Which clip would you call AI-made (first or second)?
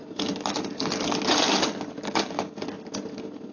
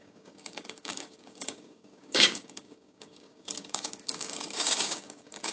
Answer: second